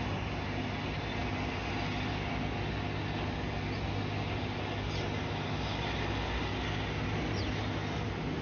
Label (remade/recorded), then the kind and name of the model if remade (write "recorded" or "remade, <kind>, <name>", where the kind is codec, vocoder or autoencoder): recorded